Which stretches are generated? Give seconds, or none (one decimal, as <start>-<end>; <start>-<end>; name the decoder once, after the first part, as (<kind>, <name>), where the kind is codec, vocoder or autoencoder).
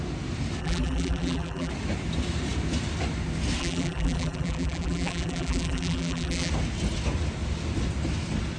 0.6-1.7 (vocoder, BigVGAN v2); 3.6-6.5